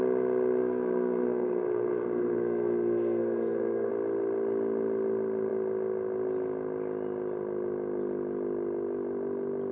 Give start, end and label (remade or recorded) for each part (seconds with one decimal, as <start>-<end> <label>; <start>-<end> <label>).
0.0-0.6 recorded; 0.6-3.9 remade; 3.9-9.7 recorded